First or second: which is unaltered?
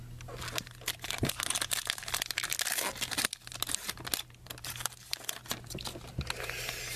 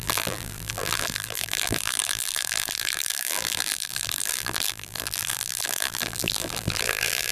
first